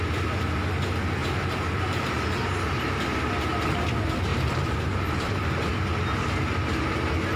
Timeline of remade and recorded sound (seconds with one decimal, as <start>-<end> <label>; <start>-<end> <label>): 0.0-1.2 recorded; 1.2-2.3 remade; 2.3-4.3 recorded; 4.3-5.7 remade; 5.7-7.4 recorded

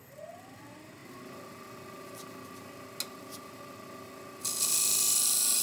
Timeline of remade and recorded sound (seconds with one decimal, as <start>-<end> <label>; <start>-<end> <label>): 0.0-5.6 recorded